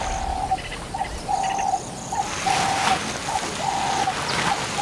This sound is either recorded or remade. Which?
recorded